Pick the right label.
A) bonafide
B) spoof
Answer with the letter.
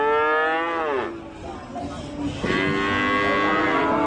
A